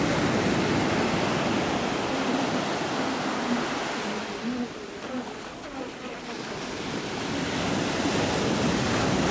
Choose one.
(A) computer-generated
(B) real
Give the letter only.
B